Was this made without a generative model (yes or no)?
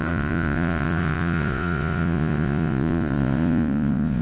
no